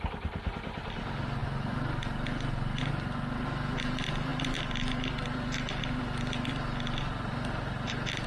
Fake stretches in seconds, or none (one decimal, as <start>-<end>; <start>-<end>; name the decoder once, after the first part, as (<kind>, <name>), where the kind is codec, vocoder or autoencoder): none